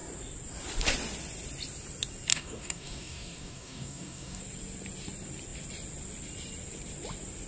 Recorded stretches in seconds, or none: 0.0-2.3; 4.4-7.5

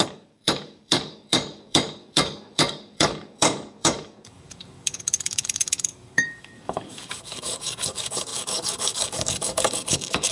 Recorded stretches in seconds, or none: none

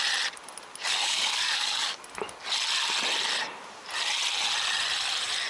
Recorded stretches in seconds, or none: 0.0-1.0; 2.0-5.5

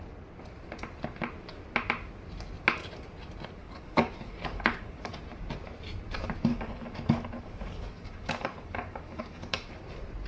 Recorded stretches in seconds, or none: 0.0-3.6; 5.1-6.5; 9.7-10.3

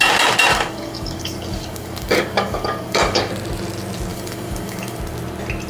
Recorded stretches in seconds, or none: 0.0-0.5; 3.3-4.1; 5.0-5.7

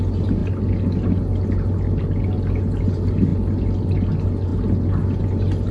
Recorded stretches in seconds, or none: 0.0-5.7

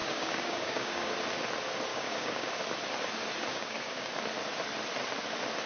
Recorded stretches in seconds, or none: 1.1-1.9; 2.5-3.5; 4.1-5.7

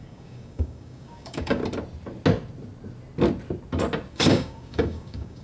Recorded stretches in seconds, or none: 1.6-4.1